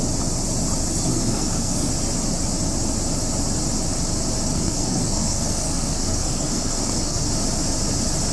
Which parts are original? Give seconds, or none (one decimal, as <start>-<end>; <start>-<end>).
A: 0.0-1.1; 1.9-4.5; 7.3-8.3